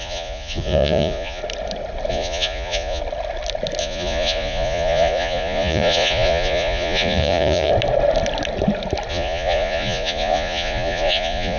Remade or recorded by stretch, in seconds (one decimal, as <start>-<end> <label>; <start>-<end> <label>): 0.0-1.4 remade; 1.4-2.1 recorded; 2.1-3.0 remade; 3.0-3.8 recorded; 3.8-7.7 remade; 7.7-9.1 recorded; 9.1-11.6 remade